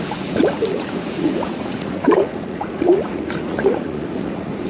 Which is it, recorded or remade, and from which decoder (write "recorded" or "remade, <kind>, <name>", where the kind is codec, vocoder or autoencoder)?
remade, vocoder, Vocos